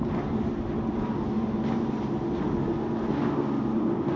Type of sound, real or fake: real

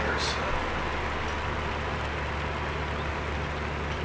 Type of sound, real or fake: real